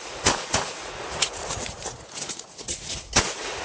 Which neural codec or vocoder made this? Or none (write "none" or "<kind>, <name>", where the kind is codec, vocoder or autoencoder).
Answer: vocoder, Vocos